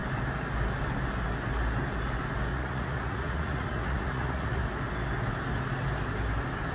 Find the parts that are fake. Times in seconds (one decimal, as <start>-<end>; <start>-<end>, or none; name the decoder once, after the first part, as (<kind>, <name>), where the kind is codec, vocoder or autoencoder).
2.5-4.6 (vocoder, Vocos)